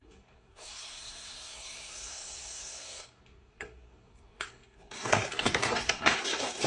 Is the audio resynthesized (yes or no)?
yes